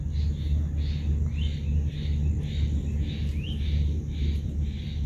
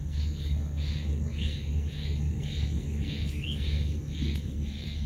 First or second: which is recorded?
first